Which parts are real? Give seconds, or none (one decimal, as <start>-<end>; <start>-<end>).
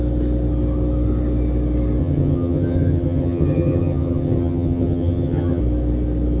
0.0-2.0; 5.6-6.4